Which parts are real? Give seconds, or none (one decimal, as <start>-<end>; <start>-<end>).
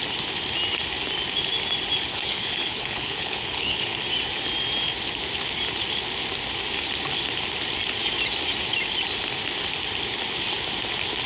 0.0-2.1; 4.0-11.3